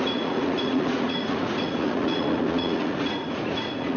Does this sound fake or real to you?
fake